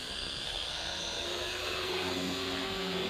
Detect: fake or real fake